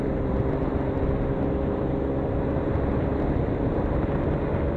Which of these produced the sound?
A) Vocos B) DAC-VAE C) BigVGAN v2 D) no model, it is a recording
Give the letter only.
C